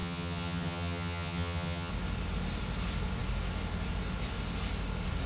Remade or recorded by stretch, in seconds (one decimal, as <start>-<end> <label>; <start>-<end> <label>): 0.0-1.9 remade; 1.9-5.3 recorded